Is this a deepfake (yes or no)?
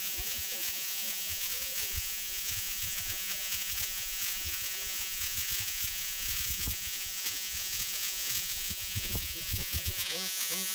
yes